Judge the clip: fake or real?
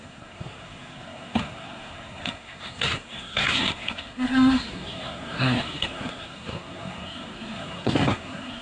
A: fake